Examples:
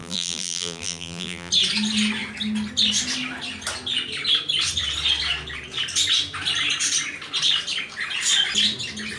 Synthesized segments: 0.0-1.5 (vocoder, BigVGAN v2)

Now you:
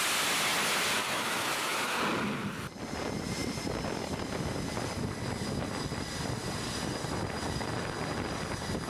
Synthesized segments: 1.0-2.0 (autoencoder, DAC-VAE)